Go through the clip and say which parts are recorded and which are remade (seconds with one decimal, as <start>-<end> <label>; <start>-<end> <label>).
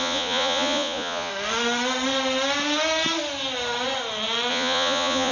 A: 0.0-1.3 remade; 1.3-4.5 recorded; 4.5-5.3 remade